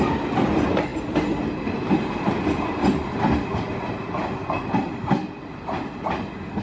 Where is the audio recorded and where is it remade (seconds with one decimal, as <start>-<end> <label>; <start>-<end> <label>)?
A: 0.0-6.6 recorded

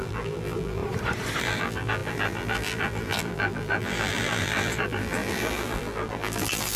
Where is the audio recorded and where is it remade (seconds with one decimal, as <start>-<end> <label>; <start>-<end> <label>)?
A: 0.0-0.8 remade; 0.8-1.4 recorded; 1.4-6.8 remade

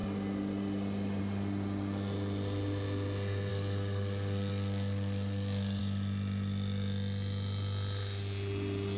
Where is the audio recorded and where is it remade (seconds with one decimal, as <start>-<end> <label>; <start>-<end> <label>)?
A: 0.0-3.5 recorded; 3.5-5.8 remade; 5.8-9.0 recorded

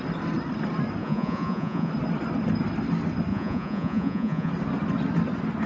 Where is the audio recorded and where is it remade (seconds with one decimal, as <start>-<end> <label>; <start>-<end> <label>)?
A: 0.0-1.0 recorded; 1.0-1.9 remade; 1.9-3.3 recorded; 3.3-4.5 remade; 4.5-5.7 recorded

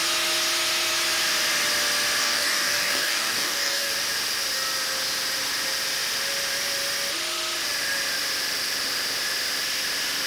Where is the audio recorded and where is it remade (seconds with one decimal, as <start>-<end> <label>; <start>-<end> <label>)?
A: 0.0-2.2 recorded; 2.2-3.9 remade; 3.9-10.3 recorded

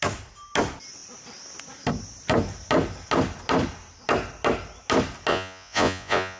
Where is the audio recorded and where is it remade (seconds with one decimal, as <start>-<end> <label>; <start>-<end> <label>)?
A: 0.0-5.3 recorded; 5.3-6.4 remade

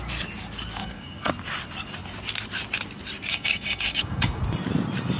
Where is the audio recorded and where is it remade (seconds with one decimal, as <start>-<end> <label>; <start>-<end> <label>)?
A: 0.0-0.8 recorded; 0.8-1.3 remade; 1.3-3.3 recorded; 3.3-4.4 remade; 4.4-5.2 recorded